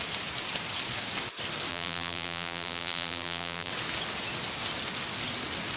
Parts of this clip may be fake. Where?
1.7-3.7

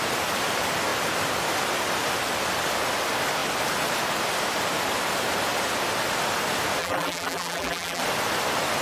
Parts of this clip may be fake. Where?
6.8-8.0

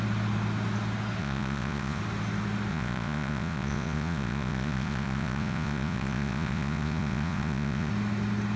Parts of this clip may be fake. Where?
1.2-2.0; 2.7-7.9